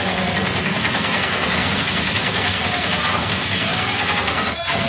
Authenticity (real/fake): fake